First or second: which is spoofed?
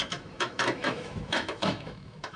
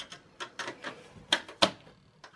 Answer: first